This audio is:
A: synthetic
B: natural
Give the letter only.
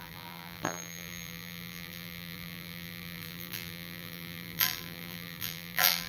A